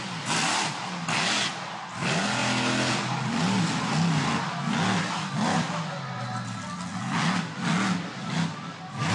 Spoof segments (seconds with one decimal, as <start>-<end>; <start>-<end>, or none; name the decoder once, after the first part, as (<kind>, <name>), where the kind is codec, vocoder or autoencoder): none